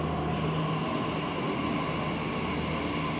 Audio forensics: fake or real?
real